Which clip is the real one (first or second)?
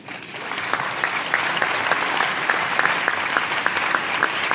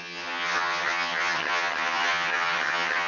first